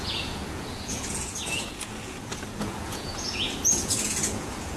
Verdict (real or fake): fake